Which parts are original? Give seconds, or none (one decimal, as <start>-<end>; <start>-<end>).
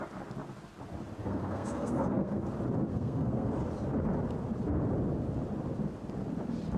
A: 0.0-1.2; 2.4-2.9; 3.5-6.8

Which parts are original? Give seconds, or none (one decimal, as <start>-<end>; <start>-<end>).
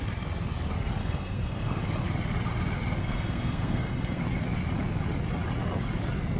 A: 0.0-1.0; 1.8-3.0; 4.2-6.4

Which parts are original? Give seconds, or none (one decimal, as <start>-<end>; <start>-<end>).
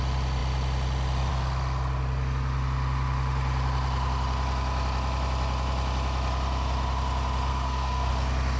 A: 0.0-7.5; 8.1-8.6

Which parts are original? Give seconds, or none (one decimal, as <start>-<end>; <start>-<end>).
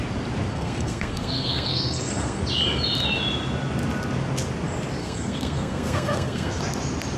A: 0.0-0.5; 2.4-5.0; 6.6-7.2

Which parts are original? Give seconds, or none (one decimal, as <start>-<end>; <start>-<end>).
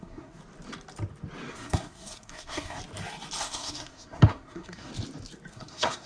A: 0.4-1.5; 2.8-3.4; 4.9-5.5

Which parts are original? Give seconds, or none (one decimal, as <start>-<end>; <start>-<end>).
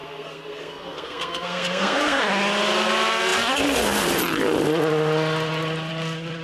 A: 2.2-6.4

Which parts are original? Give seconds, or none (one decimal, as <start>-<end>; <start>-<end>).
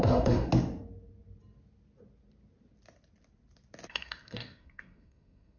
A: 0.5-3.9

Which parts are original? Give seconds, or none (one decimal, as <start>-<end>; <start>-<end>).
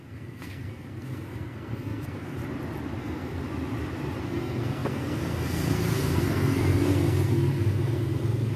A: 2.4-3.0; 3.4-4.2